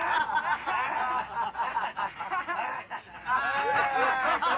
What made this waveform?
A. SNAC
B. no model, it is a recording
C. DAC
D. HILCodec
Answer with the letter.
B